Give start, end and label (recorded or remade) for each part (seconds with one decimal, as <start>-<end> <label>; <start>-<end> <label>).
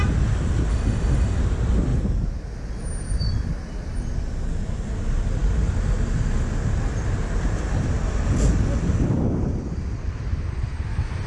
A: 0.0-0.7 recorded; 0.7-1.4 remade; 1.4-11.3 recorded